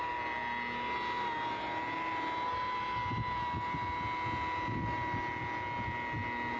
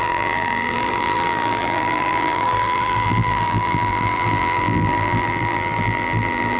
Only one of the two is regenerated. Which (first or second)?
second